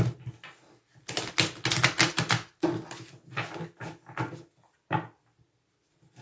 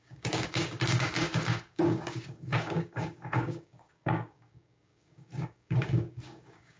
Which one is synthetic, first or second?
second